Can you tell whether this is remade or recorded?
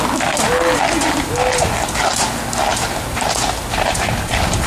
recorded